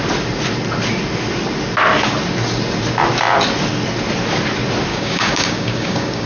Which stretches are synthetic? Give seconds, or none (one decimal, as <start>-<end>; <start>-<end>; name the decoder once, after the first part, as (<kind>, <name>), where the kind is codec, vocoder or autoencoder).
4.9-6.3 (codec, DAC)